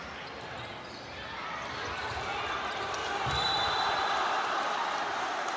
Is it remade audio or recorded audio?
recorded